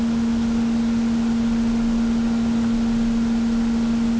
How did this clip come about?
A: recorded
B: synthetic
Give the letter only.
A